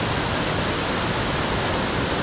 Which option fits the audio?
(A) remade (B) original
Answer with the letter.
B